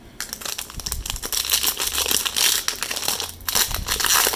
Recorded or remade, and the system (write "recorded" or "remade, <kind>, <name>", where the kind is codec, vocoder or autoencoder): recorded